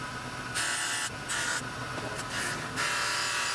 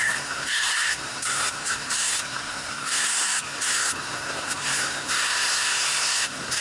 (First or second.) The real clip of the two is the first